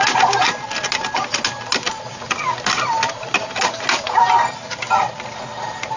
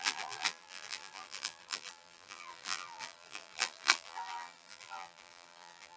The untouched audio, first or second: first